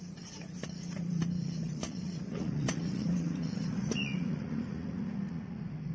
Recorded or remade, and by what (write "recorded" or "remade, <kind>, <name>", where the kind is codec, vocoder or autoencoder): remade, vocoder, Vocos